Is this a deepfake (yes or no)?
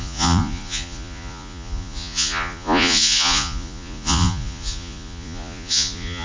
yes